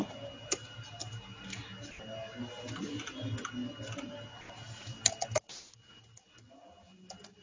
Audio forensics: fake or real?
real